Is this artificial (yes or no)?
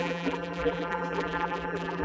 yes